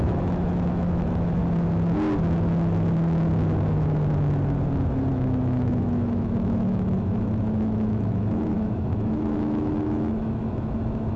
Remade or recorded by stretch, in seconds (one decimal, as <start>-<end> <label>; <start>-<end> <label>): 0.0-1.4 remade; 1.4-5.1 recorded; 5.1-11.2 remade